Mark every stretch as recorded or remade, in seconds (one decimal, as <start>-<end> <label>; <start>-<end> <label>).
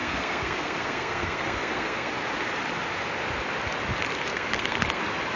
0.0-2.1 remade; 2.1-4.3 recorded; 4.3-5.0 remade; 5.0-5.4 recorded